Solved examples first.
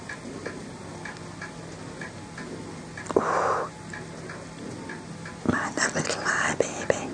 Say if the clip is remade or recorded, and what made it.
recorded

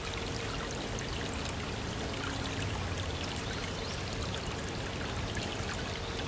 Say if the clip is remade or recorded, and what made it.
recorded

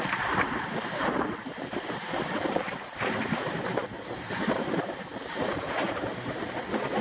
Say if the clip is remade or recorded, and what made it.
remade, vocoder, BigVGAN v2